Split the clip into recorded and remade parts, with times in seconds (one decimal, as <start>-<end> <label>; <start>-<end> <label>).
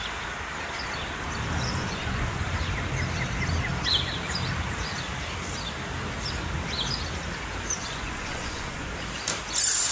0.0-1.8 recorded; 1.8-2.4 remade; 2.4-7.8 recorded; 7.8-8.9 remade; 8.9-9.9 recorded